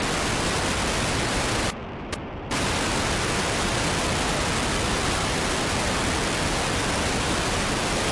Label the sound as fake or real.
real